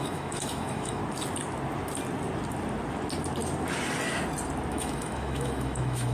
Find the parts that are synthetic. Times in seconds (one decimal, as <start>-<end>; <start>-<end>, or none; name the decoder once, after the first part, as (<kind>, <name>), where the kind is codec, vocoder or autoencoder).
0.0-1.0 (autoencoder, DAC-VAE); 4.7-6.1